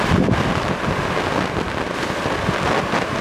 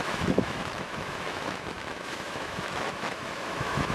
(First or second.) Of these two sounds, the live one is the first